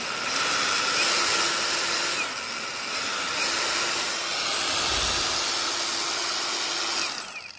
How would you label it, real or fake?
real